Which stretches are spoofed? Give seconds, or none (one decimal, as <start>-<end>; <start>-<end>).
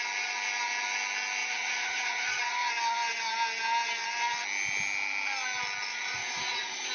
1.4-2.7; 5.9-6.9